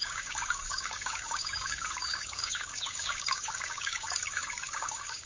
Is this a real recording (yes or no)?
no